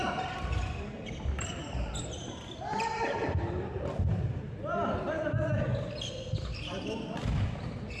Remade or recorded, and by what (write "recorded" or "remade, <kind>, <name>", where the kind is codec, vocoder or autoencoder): recorded